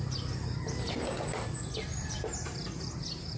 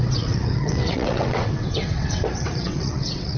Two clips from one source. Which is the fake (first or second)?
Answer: second